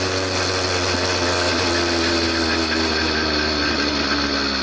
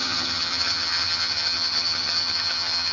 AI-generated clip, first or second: second